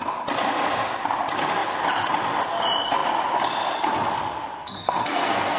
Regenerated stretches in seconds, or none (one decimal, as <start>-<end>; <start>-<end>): 4.6-5.6